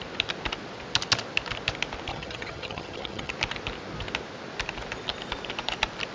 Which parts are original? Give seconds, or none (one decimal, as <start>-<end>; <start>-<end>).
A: 0.0-2.1; 3.3-6.1